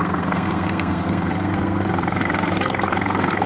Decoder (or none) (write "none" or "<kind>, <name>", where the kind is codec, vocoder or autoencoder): codec, SNAC